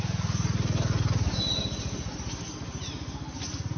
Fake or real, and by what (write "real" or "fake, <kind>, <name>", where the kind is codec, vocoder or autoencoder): real